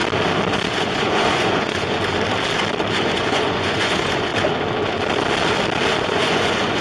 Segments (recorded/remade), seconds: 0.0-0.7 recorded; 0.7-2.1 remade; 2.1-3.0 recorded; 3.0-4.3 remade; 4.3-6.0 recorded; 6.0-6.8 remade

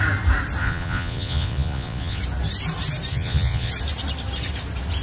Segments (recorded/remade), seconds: 0.0-0.6 recorded; 0.6-2.2 remade; 2.2-3.1 recorded; 3.1-3.7 remade; 3.7-5.0 recorded

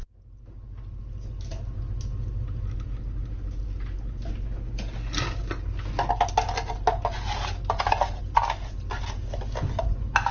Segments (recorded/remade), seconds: 0.0-10.3 recorded

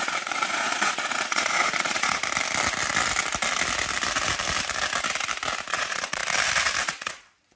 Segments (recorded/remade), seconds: 0.0-2.2 remade; 2.2-5.7 recorded; 5.7-6.2 remade; 6.2-6.8 recorded; 6.8-7.6 remade

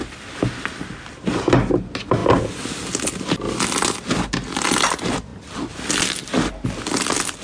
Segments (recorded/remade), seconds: 0.0-7.4 recorded

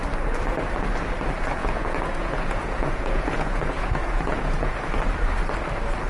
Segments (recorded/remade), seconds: 0.0-1.6 recorded; 1.6-4.9 remade; 4.9-6.1 recorded

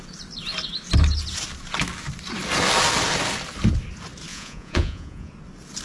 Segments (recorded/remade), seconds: 0.0-4.3 recorded; 4.3-5.3 remade; 5.3-5.8 recorded